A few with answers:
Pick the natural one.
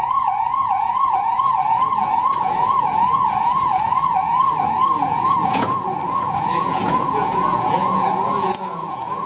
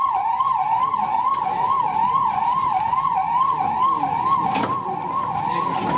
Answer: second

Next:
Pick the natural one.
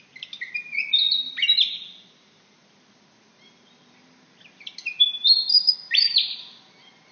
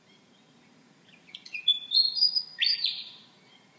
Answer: first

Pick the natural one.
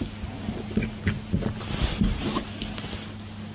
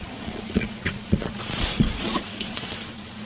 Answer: first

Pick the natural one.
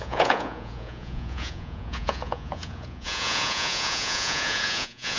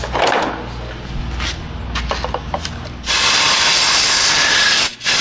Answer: second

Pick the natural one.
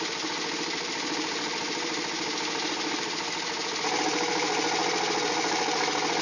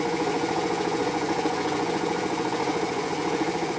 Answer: first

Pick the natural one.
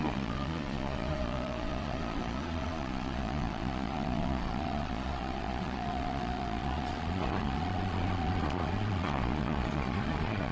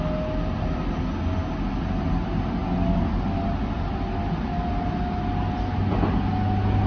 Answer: second